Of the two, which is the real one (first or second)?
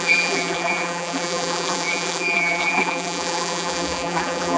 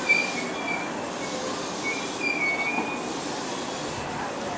second